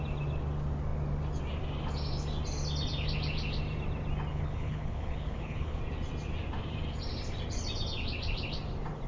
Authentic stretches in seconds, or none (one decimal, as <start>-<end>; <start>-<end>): 0.0-4.3; 5.8-9.1